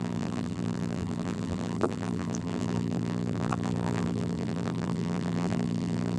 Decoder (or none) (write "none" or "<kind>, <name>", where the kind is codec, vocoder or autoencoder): vocoder, BigVGAN v2